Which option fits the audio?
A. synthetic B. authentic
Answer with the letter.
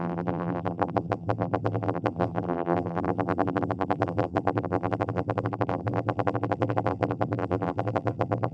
A